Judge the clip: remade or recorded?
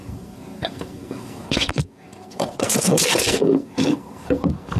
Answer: remade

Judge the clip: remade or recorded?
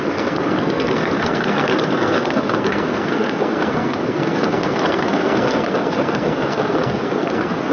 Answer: remade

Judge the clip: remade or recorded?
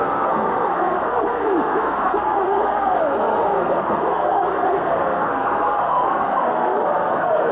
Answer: remade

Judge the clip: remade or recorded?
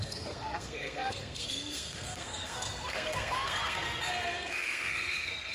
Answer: remade